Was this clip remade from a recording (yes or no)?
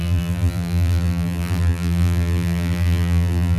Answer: yes